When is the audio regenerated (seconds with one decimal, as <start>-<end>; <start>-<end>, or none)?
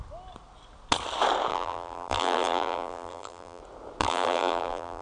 1.5-3.6; 4.0-5.0